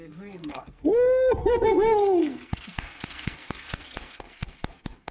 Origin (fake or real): fake